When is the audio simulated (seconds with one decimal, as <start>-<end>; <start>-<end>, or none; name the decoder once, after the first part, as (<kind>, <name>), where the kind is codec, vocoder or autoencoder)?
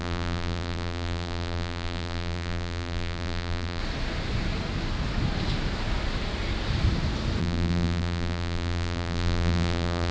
0.0-3.8 (vocoder, BigVGAN v2); 7.4-10.1